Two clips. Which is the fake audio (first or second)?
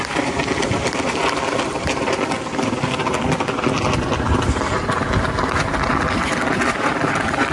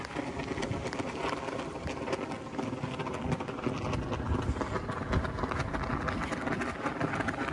first